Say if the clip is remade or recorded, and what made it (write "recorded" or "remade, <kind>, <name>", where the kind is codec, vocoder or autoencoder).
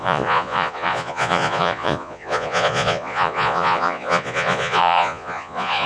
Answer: remade, vocoder, Vocos